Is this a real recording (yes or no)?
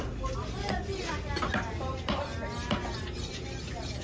yes